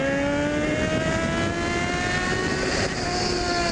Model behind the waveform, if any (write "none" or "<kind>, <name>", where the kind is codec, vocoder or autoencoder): none